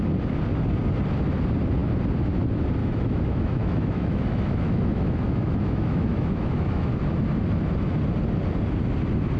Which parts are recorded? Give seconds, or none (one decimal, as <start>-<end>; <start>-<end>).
0.0-2.8; 7.0-9.4